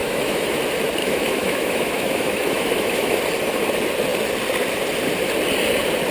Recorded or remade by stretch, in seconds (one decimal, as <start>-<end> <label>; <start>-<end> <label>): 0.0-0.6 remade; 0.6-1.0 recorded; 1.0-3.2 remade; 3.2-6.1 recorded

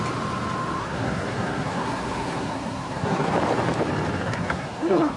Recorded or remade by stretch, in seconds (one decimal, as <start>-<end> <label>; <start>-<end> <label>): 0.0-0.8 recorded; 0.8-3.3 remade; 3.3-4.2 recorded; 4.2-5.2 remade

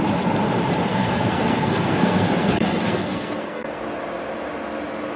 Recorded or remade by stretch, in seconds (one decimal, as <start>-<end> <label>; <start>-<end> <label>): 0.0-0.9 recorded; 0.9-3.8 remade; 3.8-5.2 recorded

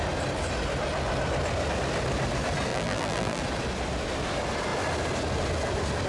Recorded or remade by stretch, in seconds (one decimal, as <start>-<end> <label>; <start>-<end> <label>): 0.0-2.7 recorded; 2.7-3.4 remade; 3.4-6.1 recorded